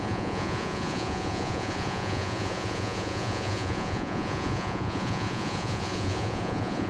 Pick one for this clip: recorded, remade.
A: remade